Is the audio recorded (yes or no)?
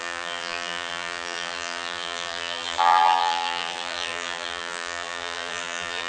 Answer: no